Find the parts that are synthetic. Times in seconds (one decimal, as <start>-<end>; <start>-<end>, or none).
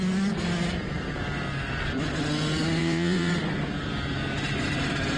2.8-3.3